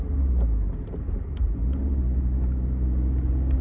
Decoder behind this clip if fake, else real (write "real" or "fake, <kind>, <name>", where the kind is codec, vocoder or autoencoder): real